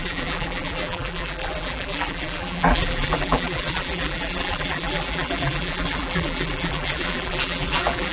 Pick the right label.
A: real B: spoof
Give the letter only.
B